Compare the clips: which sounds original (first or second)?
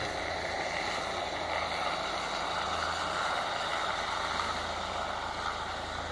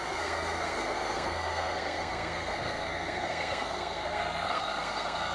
first